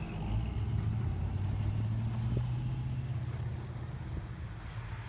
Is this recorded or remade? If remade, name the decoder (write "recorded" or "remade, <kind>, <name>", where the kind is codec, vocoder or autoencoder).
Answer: recorded